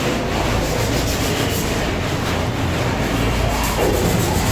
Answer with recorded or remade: recorded